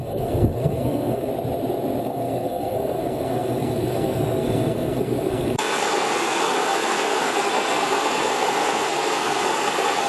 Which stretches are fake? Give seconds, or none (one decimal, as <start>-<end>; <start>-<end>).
0.0-1.3; 2.0-10.1